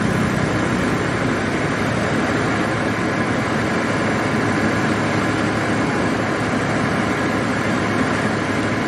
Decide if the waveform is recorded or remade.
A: recorded